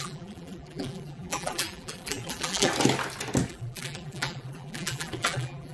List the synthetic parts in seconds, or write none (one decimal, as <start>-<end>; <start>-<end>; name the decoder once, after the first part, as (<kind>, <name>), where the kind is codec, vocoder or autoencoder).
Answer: 0.0-2.7 (vocoder, BigVGAN v2); 3.5-5.7